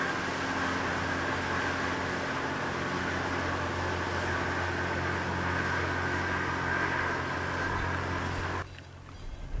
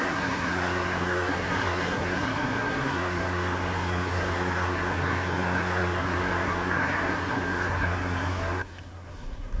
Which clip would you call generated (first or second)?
second